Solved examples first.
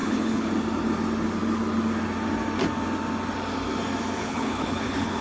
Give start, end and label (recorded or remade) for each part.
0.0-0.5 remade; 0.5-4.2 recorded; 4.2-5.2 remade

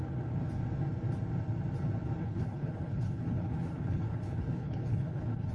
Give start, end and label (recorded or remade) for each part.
0.0-2.2 recorded; 2.2-5.5 remade

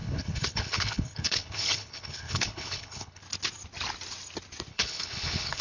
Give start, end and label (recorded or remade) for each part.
0.0-3.2 remade; 3.2-4.7 recorded; 4.7-5.6 remade